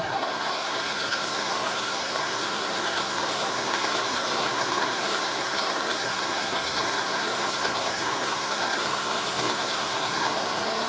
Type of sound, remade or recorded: remade